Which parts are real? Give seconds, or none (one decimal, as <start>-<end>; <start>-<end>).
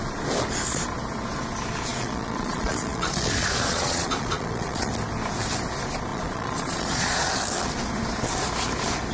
0.0-1.9; 4.9-6.1; 7.3-9.1